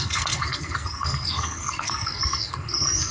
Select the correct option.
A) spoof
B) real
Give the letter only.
A